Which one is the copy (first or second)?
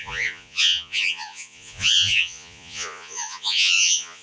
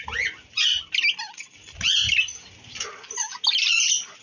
first